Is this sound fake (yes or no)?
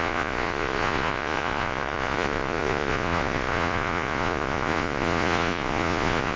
yes